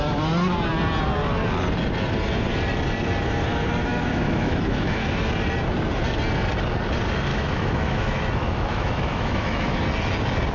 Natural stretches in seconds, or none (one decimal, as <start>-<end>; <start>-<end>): 0.0-3.9; 5.2-7.3; 9.8-10.5